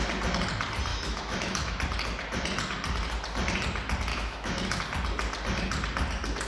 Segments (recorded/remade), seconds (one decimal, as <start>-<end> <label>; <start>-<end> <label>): 0.0-0.9 recorded; 0.9-1.8 remade; 1.8-4.1 recorded; 4.1-4.8 remade; 4.8-6.5 recorded